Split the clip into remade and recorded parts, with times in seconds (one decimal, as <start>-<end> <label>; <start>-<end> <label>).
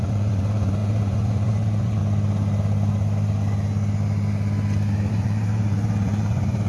0.0-2.0 remade; 2.0-5.1 recorded; 5.1-6.7 remade